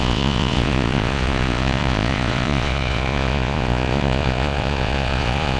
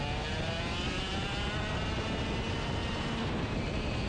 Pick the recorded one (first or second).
second